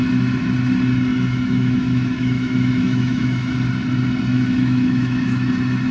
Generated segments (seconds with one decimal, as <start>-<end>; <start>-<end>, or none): 1.1-3.5; 4.3-5.5